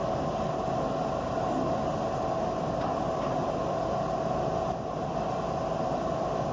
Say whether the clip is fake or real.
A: real